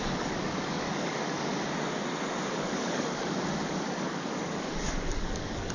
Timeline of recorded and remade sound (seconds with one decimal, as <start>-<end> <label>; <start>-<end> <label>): 0.0-1.5 remade; 1.5-2.5 recorded; 2.5-5.7 remade